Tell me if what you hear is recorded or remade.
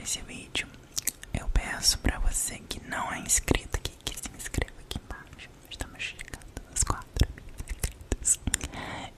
remade